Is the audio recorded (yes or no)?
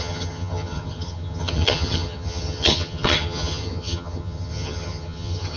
no